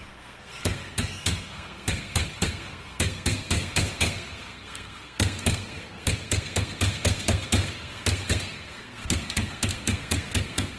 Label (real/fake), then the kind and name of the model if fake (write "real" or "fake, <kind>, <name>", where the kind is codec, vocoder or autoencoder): fake, codec, SNAC